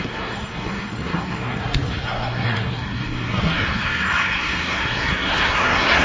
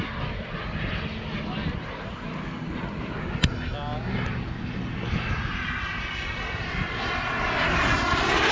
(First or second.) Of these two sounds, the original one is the second